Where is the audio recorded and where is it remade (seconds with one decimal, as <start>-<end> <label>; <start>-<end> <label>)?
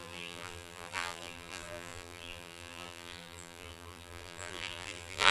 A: 0.0-5.3 remade